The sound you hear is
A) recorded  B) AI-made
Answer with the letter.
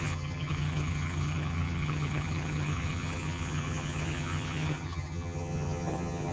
B